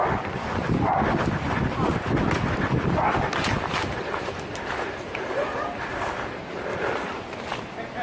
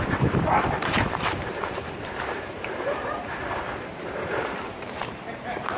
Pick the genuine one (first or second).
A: first